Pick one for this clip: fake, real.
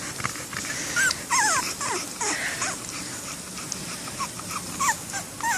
real